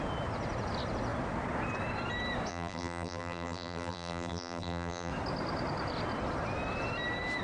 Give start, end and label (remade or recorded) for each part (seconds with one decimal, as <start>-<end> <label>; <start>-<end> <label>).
0.0-2.5 recorded; 2.5-5.1 remade; 5.1-7.4 recorded